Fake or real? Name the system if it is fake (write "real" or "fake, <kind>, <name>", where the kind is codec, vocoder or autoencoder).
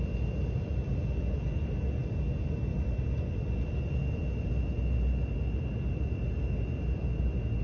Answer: real